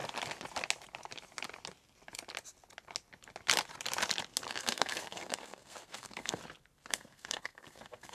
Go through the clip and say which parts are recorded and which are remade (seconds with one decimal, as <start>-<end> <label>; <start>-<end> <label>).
0.0-4.5 recorded; 4.5-6.4 remade; 6.4-6.9 recorded; 6.9-8.1 remade